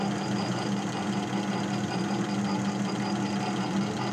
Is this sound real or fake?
real